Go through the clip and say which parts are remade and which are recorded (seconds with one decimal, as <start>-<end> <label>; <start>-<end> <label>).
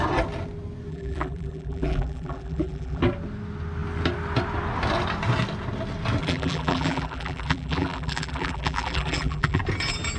0.0-0.9 recorded; 0.9-3.0 remade; 3.0-6.2 recorded; 6.2-9.6 remade; 9.6-10.2 recorded